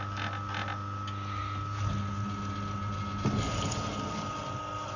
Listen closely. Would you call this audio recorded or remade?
recorded